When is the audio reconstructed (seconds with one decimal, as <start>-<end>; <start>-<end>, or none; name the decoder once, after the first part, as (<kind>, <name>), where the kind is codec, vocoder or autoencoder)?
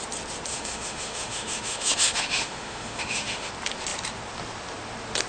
0.5-3.5 (autoencoder, DAC-VAE)